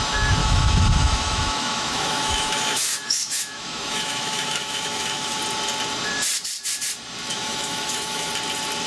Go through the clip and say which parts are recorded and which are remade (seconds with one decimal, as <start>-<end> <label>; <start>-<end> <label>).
0.0-0.4 recorded; 0.4-5.4 remade; 5.4-7.3 recorded; 7.3-8.3 remade; 8.3-8.9 recorded